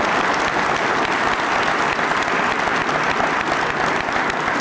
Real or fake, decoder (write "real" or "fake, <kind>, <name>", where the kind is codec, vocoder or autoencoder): real